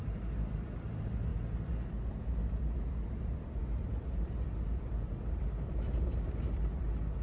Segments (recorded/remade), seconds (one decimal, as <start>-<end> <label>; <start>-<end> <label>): 0.0-1.3 remade; 1.3-2.1 recorded; 2.1-7.2 remade